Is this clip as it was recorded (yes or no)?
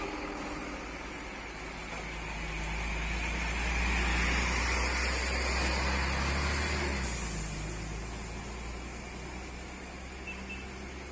yes